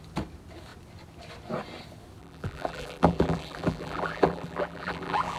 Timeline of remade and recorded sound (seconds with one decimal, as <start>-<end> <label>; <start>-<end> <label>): 0.0-2.2 recorded; 2.2-5.4 remade